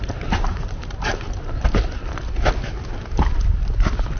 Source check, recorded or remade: recorded